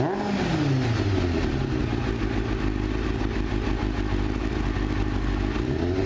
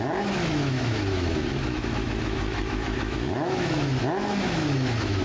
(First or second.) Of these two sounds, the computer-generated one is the second